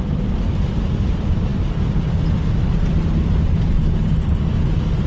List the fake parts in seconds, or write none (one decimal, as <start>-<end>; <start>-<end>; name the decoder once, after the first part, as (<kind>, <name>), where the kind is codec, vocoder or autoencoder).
none